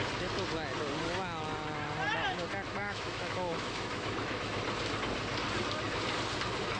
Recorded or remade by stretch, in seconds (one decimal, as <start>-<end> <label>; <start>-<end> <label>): 0.0-2.8 recorded; 2.8-4.6 remade; 4.6-6.8 recorded